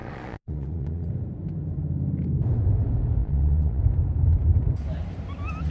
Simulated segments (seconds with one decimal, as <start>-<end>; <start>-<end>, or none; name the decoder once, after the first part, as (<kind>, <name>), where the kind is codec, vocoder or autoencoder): 0.0-1.1 (vocoder, Vocos); 3.2-3.8

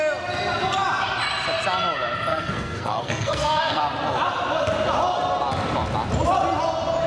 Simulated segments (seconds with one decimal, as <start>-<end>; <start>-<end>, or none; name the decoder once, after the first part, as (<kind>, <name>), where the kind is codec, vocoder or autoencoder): 2.3-3.8 (codec, SNAC)

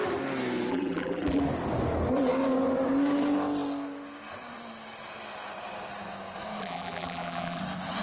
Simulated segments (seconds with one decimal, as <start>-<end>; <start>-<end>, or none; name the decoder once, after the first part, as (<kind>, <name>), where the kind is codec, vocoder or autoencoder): 0.7-1.4 (vocoder, BigVGAN v2); 6.6-7.6